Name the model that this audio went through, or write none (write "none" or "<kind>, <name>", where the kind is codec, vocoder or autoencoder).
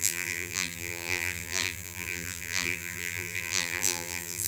vocoder, BigVGAN v2